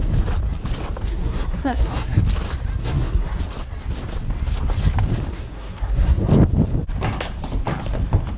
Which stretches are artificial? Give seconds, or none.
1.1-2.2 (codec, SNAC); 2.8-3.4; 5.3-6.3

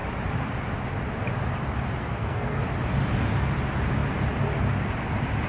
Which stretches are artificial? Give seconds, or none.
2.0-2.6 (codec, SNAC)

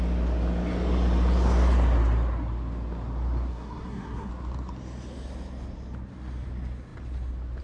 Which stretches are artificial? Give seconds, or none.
3.5-4.3 (codec, SNAC)

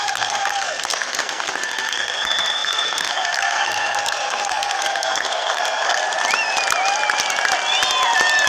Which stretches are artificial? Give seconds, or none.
0.0-6.0 (codec, SNAC)

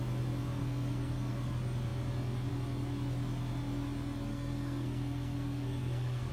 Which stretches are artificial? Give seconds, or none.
0.6-1.5 (codec, SNAC); 4.3-6.3

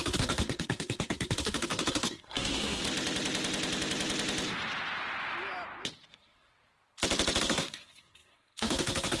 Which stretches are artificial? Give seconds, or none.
0.0-2.8 (codec, SNAC); 6.1-6.5; 7.4-9.2

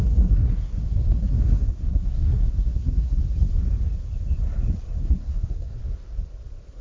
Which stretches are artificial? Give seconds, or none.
0.0-3.2 (codec, SNAC); 5.0-5.8